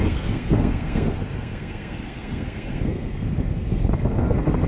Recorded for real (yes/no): no